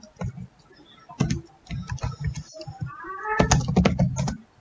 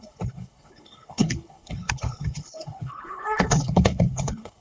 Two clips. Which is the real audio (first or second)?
first